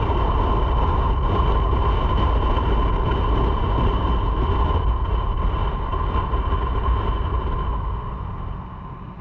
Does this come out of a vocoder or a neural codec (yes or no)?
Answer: no